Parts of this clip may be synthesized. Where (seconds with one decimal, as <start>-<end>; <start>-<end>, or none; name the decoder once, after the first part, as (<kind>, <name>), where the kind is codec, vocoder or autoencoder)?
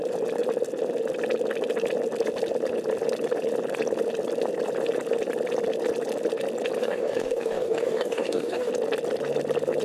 6.8-8.7 (codec, DAC)